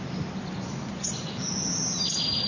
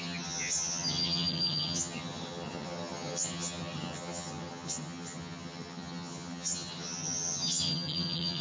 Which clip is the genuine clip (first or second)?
first